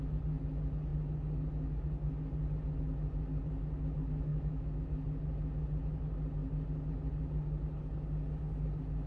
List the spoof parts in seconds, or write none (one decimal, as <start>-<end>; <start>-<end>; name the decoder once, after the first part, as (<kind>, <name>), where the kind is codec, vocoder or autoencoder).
4.3-4.8 (autoencoder, DAC-VAE)